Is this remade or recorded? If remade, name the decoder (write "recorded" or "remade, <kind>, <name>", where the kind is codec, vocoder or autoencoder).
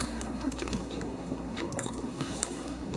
remade, codec, SNAC